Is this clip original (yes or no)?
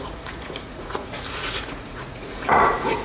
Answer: no